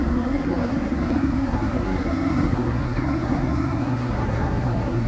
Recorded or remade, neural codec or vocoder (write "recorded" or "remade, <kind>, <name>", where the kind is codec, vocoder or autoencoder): remade, codec, SNAC